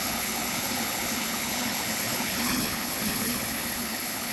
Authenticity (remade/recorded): remade